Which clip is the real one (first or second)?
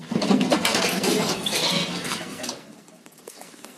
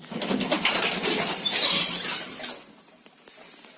second